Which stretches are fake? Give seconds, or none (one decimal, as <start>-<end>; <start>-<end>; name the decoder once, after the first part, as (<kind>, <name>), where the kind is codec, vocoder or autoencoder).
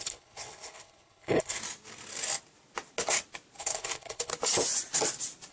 0.0-1.6 (codec, HILCodec); 3.6-4.3